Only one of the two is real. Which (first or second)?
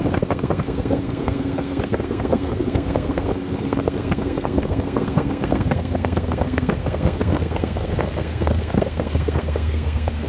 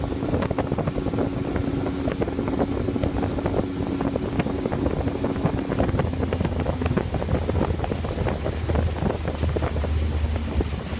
second